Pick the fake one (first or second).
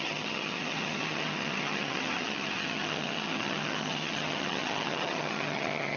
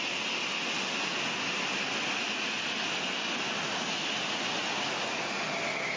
first